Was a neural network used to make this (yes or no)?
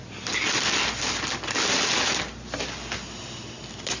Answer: no